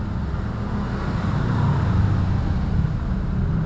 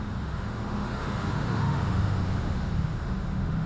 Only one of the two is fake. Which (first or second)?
second